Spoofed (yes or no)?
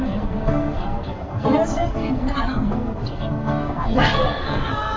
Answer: yes